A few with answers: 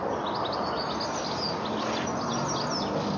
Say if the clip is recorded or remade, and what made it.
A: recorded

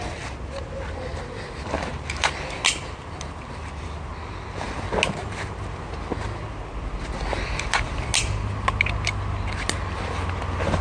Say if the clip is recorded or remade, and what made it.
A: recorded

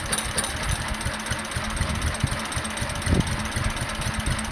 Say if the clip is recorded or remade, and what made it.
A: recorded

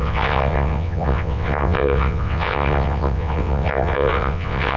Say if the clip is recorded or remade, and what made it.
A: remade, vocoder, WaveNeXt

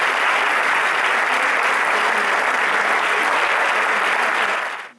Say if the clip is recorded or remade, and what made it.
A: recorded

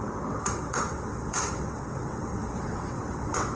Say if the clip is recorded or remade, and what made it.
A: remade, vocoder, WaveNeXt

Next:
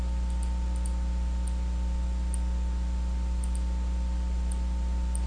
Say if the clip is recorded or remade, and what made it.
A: recorded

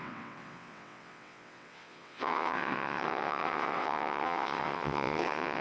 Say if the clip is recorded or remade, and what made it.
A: remade, vocoder, WaveNeXt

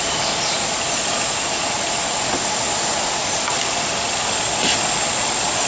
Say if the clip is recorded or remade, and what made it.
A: recorded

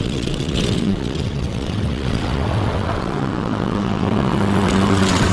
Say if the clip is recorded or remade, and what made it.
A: remade, vocoder, WaveNeXt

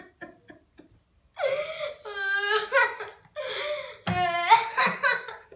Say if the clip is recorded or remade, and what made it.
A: recorded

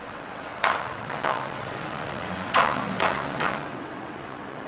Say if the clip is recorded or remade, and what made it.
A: remade, vocoder, WaveNeXt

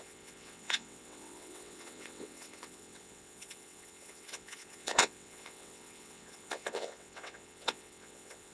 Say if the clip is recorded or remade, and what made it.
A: remade, vocoder, WaveNeXt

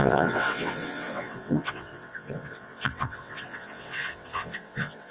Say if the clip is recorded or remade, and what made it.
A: remade, vocoder, WaveNeXt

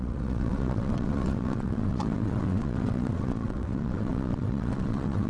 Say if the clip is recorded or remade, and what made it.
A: remade, vocoder, WaveNeXt